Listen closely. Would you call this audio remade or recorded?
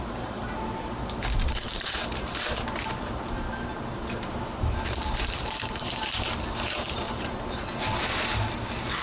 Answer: remade